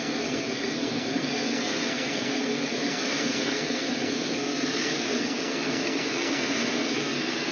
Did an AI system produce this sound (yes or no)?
yes